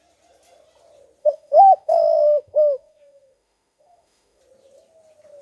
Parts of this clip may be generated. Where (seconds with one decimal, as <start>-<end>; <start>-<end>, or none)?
1.2-4.4